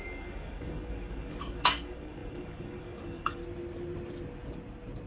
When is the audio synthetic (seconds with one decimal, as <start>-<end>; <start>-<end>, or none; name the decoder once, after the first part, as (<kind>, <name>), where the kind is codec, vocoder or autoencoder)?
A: 0.0-3.4 (codec, DAC)

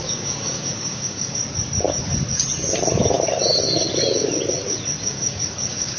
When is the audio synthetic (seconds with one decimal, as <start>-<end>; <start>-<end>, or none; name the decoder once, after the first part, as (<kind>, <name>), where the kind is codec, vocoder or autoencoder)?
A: 0.0-1.4 (codec, DAC); 5.0-6.0

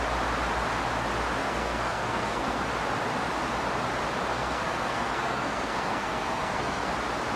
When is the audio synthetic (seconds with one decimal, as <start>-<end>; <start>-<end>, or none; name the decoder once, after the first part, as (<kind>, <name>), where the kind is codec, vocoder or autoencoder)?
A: 1.4-2.7 (codec, SNAC); 4.3-6.9

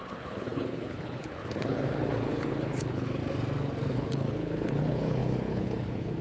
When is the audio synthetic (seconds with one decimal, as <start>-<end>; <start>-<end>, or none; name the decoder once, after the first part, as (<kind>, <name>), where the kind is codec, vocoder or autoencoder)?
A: 0.0-3.2 (codec, HILCodec); 3.9-6.2